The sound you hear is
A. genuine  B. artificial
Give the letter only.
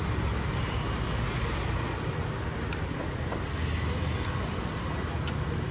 A